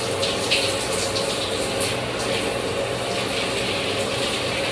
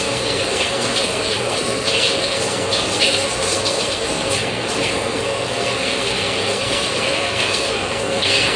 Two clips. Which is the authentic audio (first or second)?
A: first